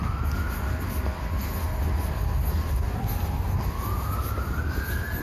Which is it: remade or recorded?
recorded